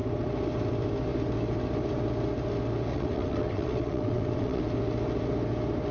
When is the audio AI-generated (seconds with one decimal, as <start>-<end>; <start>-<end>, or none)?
2.9-4.6